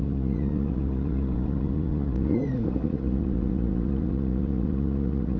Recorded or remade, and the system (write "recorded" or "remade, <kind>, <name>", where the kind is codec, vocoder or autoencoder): remade, vocoder, Vocos